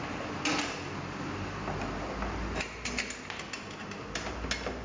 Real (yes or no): yes